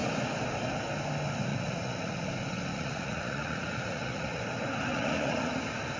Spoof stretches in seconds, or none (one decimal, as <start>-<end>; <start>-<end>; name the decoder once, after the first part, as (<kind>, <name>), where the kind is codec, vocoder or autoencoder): 1.5-2.3 (vocoder, Vocos); 2.7-4.4; 4.9-5.5